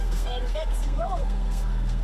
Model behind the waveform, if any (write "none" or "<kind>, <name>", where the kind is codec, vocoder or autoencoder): codec, SNAC